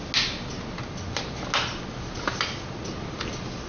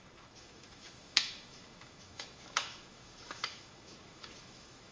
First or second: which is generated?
second